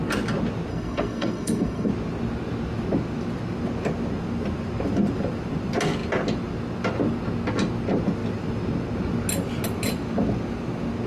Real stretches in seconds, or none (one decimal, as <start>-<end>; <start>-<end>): 0.0-0.7; 1.9-11.1